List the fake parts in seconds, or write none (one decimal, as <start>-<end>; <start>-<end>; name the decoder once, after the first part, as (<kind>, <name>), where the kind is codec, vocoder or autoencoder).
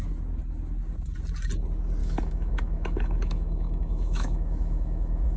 2.0-5.4 (autoencoder, DAC-VAE)